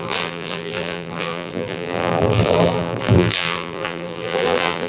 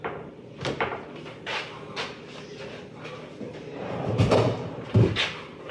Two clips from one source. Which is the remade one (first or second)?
first